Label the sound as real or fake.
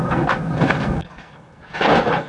fake